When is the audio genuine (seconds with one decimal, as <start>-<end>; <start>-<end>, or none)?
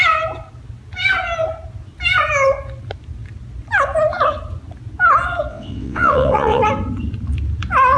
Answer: 0.0-5.5; 6.6-8.0